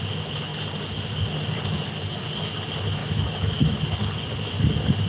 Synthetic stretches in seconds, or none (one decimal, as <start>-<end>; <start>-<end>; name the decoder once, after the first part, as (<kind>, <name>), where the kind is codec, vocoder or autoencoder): 3.0-3.8 (autoencoder, DAC-VAE)